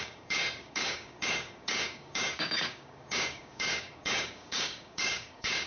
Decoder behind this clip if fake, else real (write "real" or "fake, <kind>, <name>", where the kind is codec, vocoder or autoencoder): fake, codec, DAC